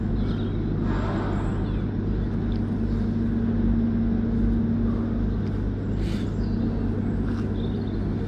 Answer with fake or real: real